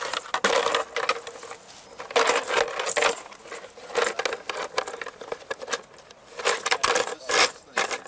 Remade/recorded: recorded